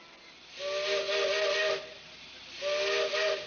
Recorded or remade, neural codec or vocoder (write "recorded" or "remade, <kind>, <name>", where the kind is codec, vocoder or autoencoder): recorded